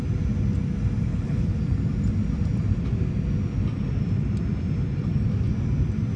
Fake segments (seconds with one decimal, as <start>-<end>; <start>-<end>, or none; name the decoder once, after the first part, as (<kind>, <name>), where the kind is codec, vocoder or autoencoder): 1.1-1.6 (codec, HILCodec)